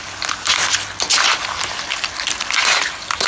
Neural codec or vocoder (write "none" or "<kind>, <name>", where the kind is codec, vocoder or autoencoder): none